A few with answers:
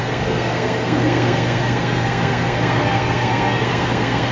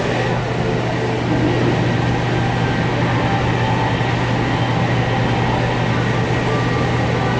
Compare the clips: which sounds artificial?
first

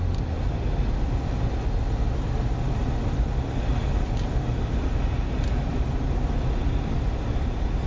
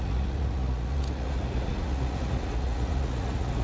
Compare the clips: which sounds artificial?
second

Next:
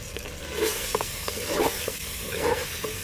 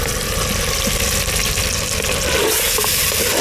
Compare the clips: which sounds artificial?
first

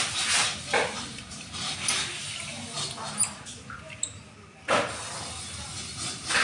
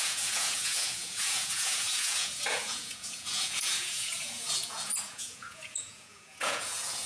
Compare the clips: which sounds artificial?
second